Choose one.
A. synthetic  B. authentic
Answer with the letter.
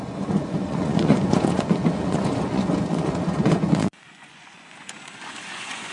A